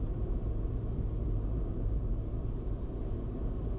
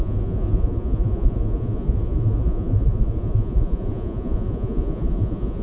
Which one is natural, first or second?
first